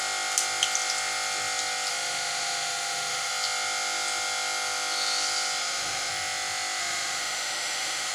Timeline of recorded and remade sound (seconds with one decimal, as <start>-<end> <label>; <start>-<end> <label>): 0.0-1.9 recorded; 1.9-3.3 remade; 3.3-5.6 recorded; 5.6-6.1 remade; 6.1-6.8 recorded; 6.8-8.1 remade